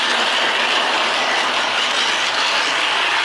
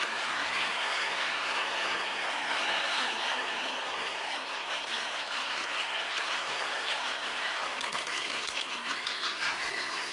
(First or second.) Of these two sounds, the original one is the first